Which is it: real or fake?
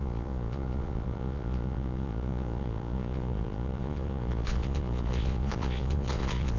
fake